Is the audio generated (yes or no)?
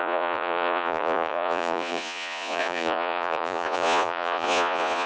yes